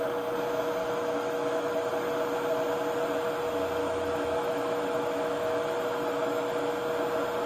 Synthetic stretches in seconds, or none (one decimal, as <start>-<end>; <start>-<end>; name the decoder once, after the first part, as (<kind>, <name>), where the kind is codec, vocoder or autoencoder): 0.8-1.9 (autoencoder, DAC-VAE); 3.8-6.7